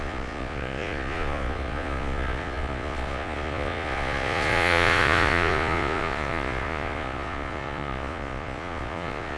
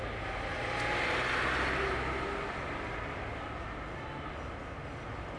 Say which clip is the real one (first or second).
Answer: second